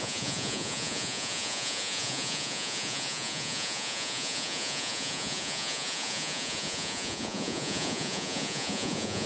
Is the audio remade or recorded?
remade